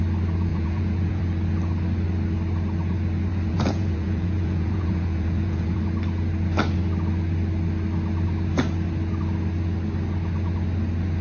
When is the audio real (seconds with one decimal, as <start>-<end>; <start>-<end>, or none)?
0.0-0.5; 1.2-3.3; 5.8-11.2